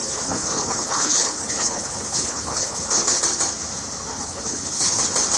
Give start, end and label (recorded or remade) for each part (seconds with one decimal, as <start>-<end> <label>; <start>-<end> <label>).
0.0-3.2 remade; 3.2-4.1 recorded; 4.1-5.0 remade; 5.0-5.4 recorded